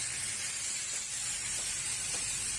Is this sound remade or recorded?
recorded